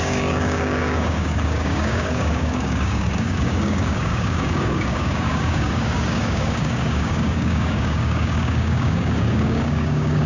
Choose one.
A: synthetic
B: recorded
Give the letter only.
A